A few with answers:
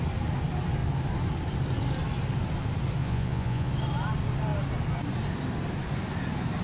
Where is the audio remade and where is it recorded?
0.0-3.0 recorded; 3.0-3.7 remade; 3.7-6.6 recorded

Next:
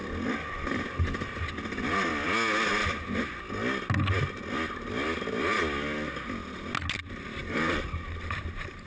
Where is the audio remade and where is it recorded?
0.0-7.4 recorded; 7.4-8.5 remade; 8.5-8.9 recorded

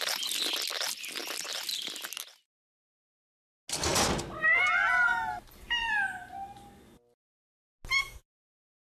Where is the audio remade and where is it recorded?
0.0-8.9 recorded

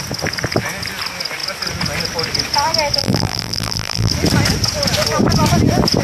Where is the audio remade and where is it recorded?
0.0-3.0 recorded; 3.0-4.1 remade; 4.1-6.0 recorded

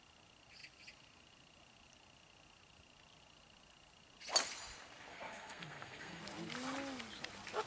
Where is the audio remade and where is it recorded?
0.0-5.1 recorded; 5.1-6.2 remade; 6.2-7.7 recorded

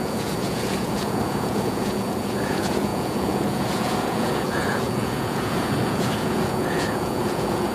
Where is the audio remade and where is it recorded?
0.0-7.7 remade

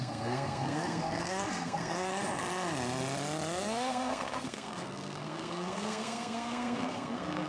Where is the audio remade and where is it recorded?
0.0-2.1 remade; 2.1-3.6 recorded; 3.6-7.5 remade

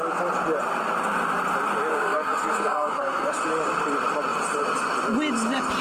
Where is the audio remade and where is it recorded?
0.0-1.9 recorded; 1.9-3.3 remade; 3.3-5.8 recorded